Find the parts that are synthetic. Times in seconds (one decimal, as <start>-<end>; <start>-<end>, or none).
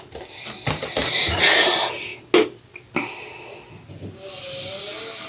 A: none